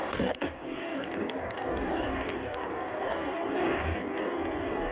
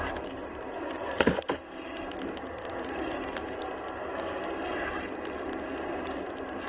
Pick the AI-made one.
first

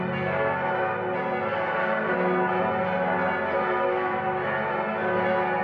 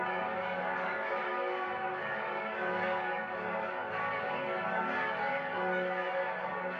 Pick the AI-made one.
second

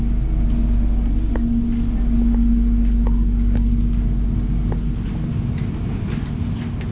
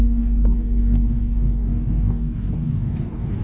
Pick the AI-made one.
second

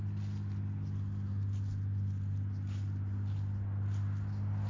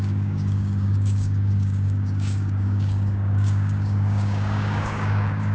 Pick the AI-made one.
second